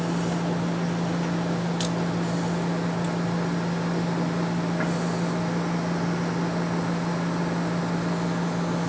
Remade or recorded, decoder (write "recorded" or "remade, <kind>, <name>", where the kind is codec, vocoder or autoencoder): recorded